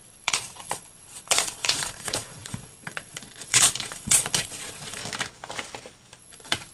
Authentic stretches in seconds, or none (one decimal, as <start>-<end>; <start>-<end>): 5.0-6.2

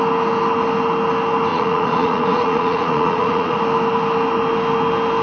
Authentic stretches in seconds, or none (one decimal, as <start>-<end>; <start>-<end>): 0.0-1.5; 3.6-5.2

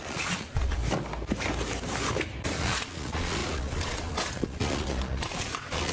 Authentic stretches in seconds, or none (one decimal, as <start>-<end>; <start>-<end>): 0.8-2.6

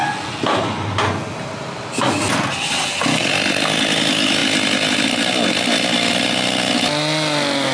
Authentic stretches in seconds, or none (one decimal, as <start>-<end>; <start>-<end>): 0.0-7.7

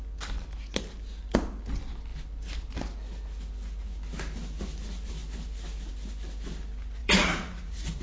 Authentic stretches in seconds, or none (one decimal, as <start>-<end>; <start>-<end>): 0.0-7.0

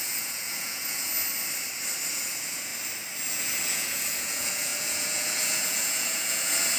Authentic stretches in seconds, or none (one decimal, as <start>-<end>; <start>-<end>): 1.1-2.1; 2.7-3.3

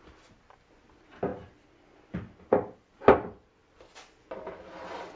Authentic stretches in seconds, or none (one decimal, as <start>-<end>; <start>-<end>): 0.0-5.2